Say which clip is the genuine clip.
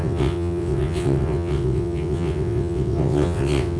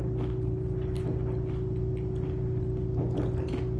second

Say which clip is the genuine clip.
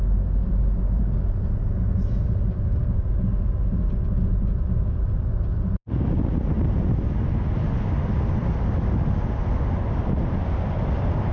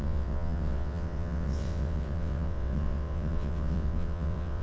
first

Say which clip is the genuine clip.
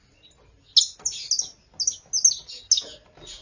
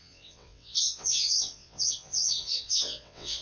first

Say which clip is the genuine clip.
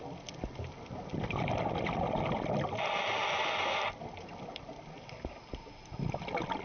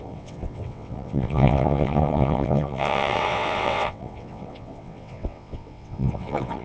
first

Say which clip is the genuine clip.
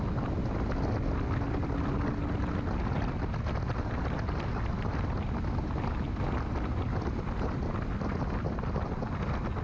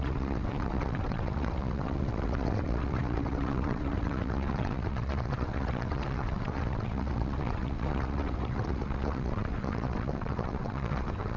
first